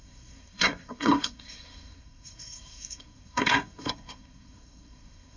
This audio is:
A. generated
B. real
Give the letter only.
A